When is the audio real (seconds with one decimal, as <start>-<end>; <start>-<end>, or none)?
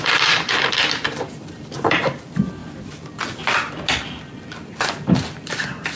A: 2.6-4.7